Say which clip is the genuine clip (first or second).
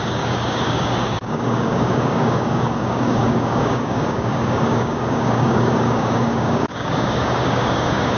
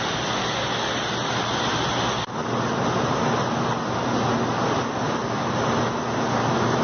second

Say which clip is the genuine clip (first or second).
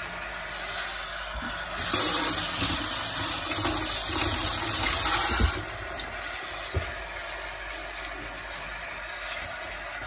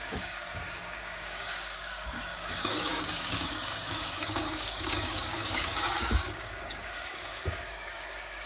first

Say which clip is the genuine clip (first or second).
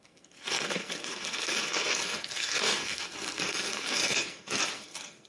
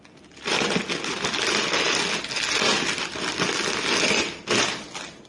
second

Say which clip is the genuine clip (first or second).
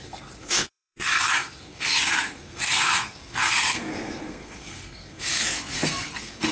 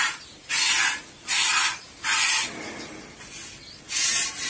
second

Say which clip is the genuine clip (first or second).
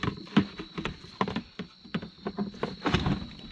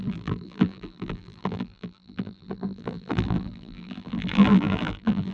first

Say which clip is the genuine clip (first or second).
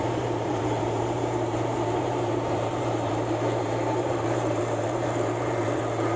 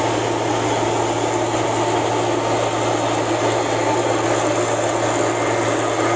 second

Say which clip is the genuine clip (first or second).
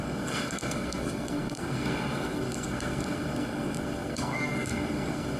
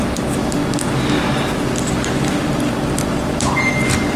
second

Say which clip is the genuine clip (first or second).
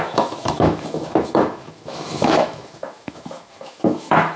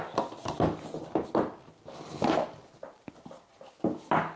second